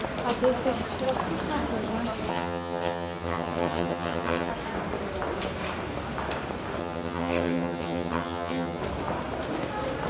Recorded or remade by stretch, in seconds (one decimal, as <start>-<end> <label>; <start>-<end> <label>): 0.0-2.3 recorded; 2.3-4.5 remade; 4.5-6.8 recorded; 6.8-8.8 remade; 8.8-10.1 recorded